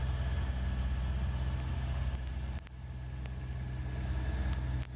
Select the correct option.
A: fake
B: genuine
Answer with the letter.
B